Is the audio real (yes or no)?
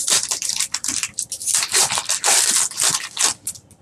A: no